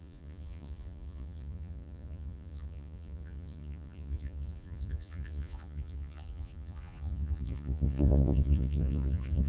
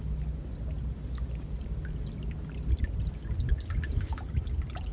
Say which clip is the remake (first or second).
first